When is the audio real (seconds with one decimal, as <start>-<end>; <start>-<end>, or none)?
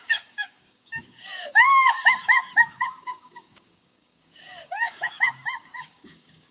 none